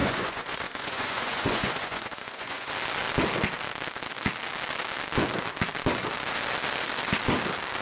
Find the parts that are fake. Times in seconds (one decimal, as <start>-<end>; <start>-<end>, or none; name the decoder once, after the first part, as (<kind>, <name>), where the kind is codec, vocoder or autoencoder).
0.0-2.7 (vocoder, Vocos)